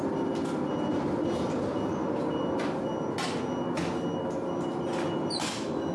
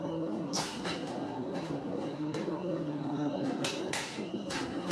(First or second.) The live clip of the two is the first